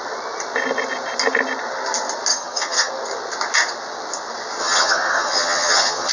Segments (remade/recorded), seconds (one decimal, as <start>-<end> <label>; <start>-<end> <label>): 0.0-2.3 recorded; 2.3-2.9 remade; 2.9-4.6 recorded; 4.6-6.1 remade

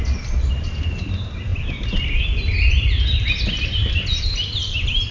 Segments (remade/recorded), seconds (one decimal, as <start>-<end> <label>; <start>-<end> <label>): 0.0-5.1 recorded

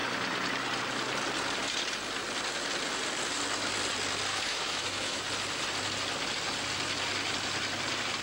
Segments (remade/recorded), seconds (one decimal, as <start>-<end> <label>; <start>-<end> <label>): 0.0-4.3 recorded; 4.3-5.2 remade; 5.2-8.2 recorded

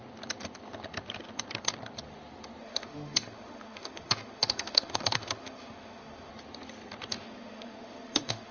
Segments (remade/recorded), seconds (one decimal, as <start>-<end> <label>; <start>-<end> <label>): 0.0-2.6 recorded; 2.6-6.3 remade; 6.3-7.1 recorded; 7.1-8.5 remade

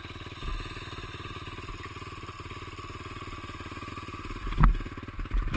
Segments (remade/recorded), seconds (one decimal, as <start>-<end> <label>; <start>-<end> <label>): 0.0-5.6 recorded

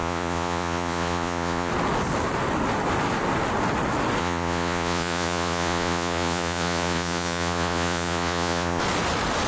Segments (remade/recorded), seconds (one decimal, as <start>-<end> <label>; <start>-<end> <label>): 0.0-1.7 remade; 1.7-4.2 recorded; 4.2-8.8 remade; 8.8-9.5 recorded